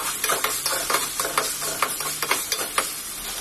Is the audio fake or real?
real